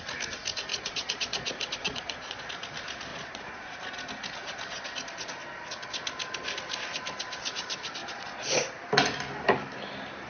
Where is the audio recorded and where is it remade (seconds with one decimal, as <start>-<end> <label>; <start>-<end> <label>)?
0.0-0.7 recorded; 0.7-2.4 remade; 2.4-3.1 recorded; 3.1-3.7 remade; 3.7-8.0 recorded; 8.0-8.6 remade; 8.6-10.3 recorded